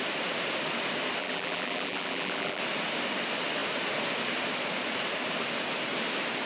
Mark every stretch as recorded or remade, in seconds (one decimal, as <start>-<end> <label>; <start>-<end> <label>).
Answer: 0.0-1.2 recorded; 1.2-2.6 remade; 2.6-6.5 recorded